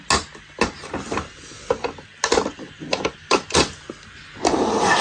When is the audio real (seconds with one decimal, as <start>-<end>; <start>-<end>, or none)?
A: 0.0-5.0